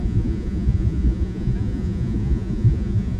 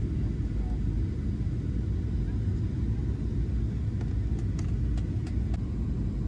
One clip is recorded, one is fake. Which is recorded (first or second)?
second